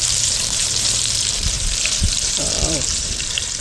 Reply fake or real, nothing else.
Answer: fake